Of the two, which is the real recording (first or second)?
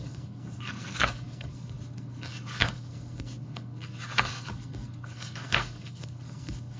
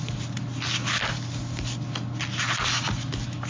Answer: second